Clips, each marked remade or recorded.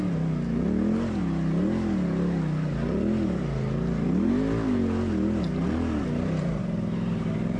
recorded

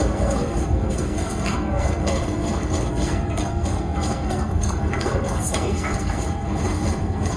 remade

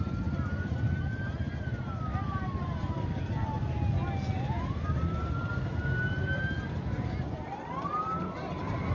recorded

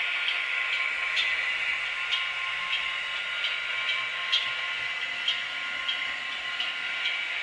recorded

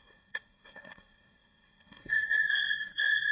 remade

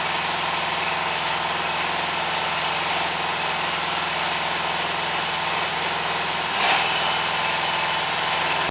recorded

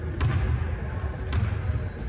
recorded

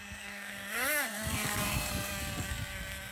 remade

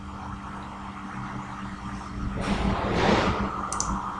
recorded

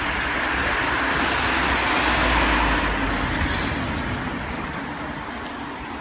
recorded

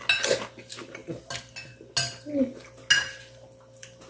recorded